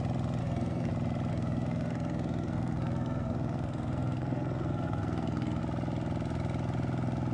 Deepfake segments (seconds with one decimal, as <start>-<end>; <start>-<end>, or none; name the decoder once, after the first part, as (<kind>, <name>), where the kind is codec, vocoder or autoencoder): 0.4-0.9 (codec, SNAC); 1.3-5.6